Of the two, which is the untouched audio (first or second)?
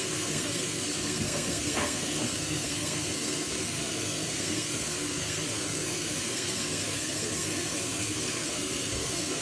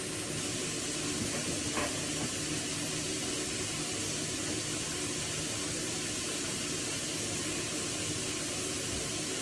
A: second